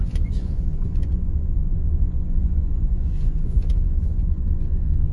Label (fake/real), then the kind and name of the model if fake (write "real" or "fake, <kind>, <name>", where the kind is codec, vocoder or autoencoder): fake, vocoder, Vocos